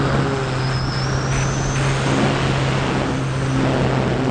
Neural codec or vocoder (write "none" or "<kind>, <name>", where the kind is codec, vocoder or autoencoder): none